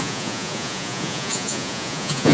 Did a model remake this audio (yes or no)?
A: yes